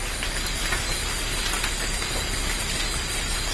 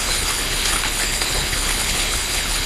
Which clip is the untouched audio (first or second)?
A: first